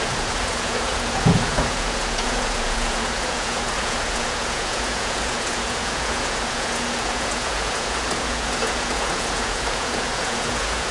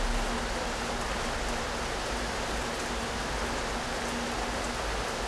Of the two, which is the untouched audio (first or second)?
second